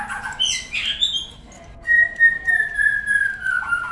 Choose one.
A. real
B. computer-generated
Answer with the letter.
A